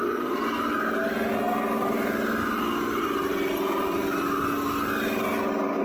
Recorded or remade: recorded